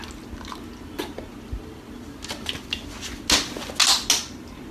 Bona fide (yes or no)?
yes